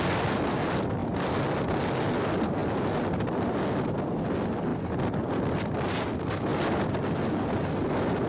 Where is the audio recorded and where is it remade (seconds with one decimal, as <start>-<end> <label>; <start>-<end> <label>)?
0.0-8.3 recorded